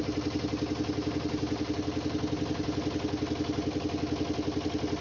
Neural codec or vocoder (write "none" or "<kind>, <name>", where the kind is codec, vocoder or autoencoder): none